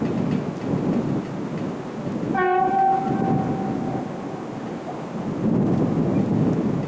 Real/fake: real